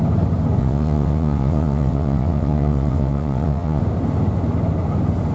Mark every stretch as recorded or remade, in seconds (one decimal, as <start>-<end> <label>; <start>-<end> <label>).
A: 0.0-0.6 recorded; 0.6-3.8 remade; 3.8-5.3 recorded